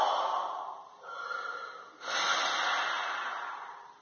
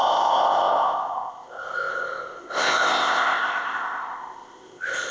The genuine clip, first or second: first